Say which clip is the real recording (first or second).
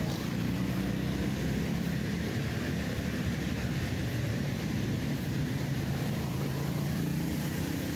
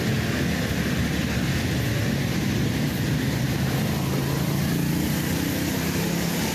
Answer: second